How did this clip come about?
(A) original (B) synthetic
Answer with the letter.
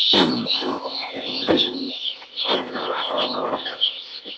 B